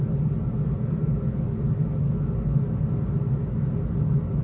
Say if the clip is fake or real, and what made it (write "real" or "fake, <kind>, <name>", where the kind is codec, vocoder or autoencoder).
real